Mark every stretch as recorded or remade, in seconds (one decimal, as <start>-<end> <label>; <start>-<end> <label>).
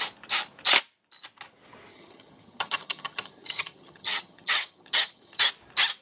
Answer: 0.0-1.9 recorded; 1.9-5.5 remade; 5.5-6.0 recorded